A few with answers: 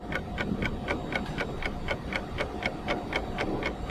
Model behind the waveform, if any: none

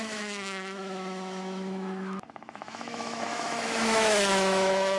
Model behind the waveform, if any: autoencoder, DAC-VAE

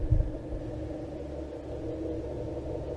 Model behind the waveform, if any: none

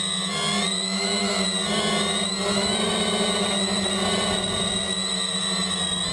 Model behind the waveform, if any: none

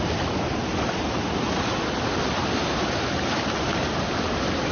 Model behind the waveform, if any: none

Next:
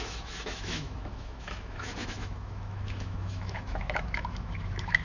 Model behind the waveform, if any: autoencoder, DAC-VAE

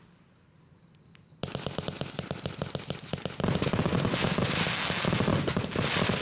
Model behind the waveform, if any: none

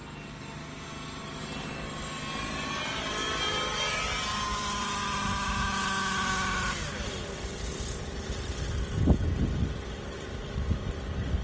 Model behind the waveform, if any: none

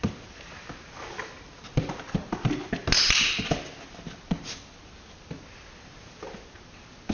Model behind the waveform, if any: none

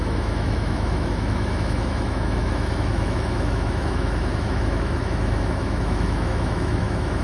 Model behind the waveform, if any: autoencoder, DAC-VAE